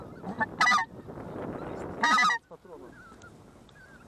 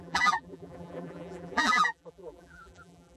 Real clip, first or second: first